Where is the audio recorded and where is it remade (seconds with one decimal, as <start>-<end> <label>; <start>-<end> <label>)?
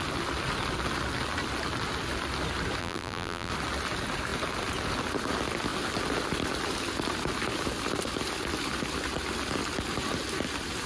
0.0-2.8 recorded; 2.8-3.5 remade; 3.5-10.9 recorded